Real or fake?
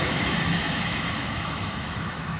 fake